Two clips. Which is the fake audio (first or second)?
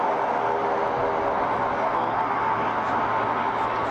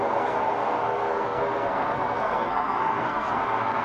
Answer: second